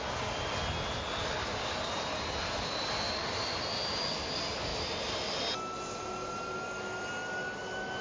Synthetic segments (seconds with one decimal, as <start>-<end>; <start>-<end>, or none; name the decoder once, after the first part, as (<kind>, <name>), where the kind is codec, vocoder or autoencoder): none